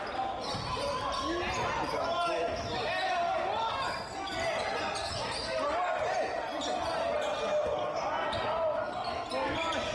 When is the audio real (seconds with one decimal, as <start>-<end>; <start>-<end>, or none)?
0.0-9.9